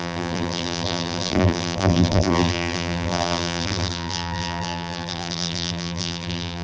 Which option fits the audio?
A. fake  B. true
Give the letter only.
A